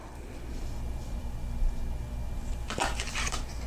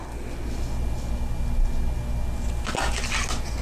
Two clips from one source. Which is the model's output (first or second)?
first